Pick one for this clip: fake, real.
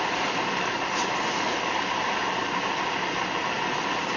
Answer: real